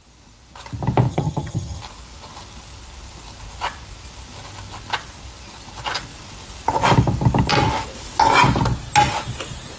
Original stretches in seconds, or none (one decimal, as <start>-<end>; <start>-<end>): 0.0-1.1; 1.8-9.8